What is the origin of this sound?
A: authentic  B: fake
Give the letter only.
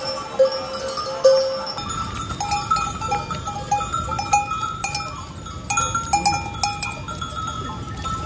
A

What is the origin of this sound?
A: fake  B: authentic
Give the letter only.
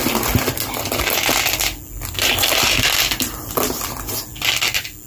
B